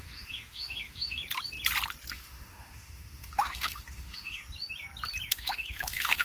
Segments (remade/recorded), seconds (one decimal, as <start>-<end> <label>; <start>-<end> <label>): 0.0-1.2 remade; 1.2-2.1 recorded; 2.1-4.4 remade; 4.4-5.3 recorded; 5.3-6.2 remade

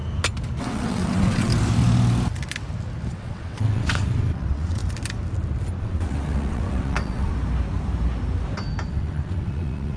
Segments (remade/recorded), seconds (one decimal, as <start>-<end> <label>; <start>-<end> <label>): 0.0-0.6 recorded; 0.6-1.5 remade; 1.5-3.1 recorded; 3.1-4.8 remade; 4.8-5.8 recorded; 5.8-7.3 remade; 7.3-8.9 recorded; 8.9-10.0 remade

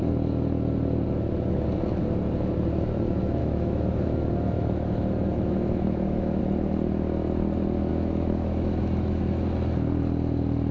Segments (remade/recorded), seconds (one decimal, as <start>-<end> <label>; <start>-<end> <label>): 0.0-3.4 recorded; 3.4-6.4 remade; 6.4-7.9 recorded; 7.9-9.2 remade; 9.2-10.7 recorded

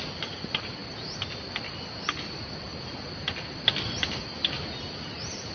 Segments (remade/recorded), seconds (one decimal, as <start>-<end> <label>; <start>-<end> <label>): 0.0-5.5 recorded

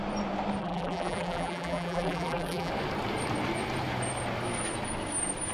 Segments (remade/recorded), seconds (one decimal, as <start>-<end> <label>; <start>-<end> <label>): 0.0-0.6 recorded; 0.6-2.7 remade; 2.7-5.5 recorded

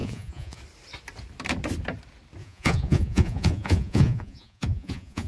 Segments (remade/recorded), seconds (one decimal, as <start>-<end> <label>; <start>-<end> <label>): 0.0-0.6 remade; 0.6-2.4 recorded; 2.4-5.3 remade